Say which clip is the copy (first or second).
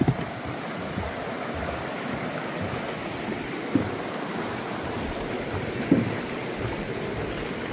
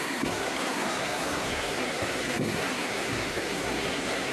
second